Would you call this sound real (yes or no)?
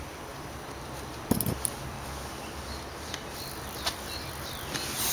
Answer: yes